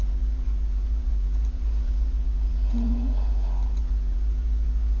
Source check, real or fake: fake